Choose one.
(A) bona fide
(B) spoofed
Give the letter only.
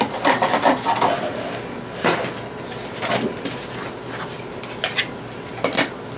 A